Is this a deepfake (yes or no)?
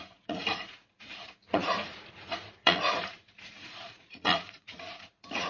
yes